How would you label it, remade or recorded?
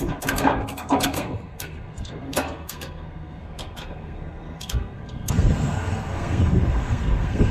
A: remade